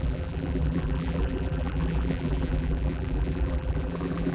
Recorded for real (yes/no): no